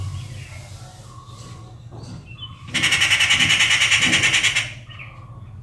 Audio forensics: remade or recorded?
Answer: recorded